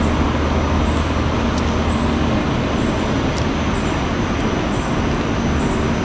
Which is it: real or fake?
real